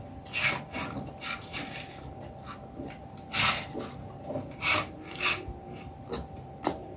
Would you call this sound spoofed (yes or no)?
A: no